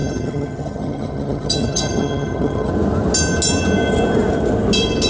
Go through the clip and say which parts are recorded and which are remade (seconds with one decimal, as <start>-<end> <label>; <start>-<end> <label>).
0.0-2.7 remade; 2.7-5.1 recorded